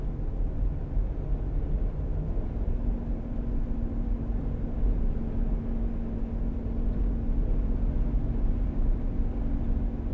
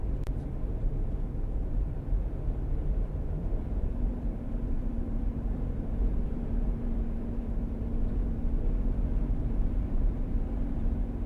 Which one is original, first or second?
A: first